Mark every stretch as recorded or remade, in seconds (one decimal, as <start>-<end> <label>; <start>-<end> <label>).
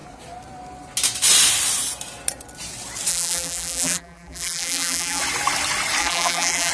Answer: 0.0-3.1 recorded; 3.1-5.2 remade; 5.2-6.0 recorded; 6.0-6.7 remade